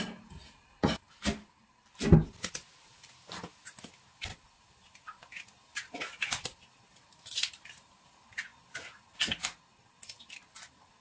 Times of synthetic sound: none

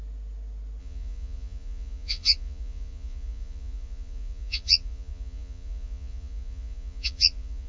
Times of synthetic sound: 0.8-7.7 (vocoder, Vocos)

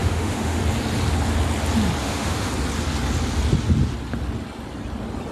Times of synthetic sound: 0.0-0.6 (autoencoder, DAC-VAE); 2.0-2.5

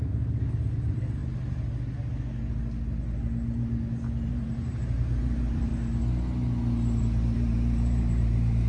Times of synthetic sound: 0.0-1.2 (vocoder, BigVGAN v2); 4.3-5.7; 7.0-8.7

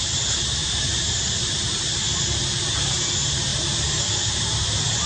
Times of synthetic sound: 0.6-2.9 (vocoder, BigVGAN v2); 3.5-5.1

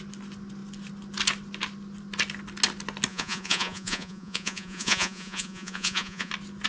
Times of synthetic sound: 3.1-6.3 (vocoder, Vocos)

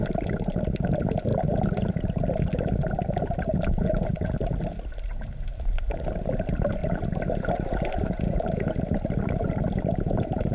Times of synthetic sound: 0.0-1.3 (vocoder, BigVGAN v2); 5.6-6.8; 9.9-10.5

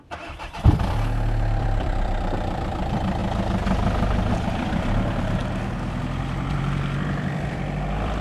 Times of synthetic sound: 0.0-3.2 (vocoder, BigVGAN v2); 4.3-5.4; 6.0-8.2